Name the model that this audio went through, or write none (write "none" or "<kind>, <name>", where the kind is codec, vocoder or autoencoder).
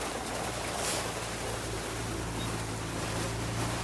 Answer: none